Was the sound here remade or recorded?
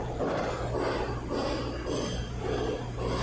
recorded